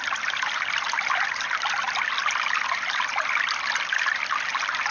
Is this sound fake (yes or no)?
no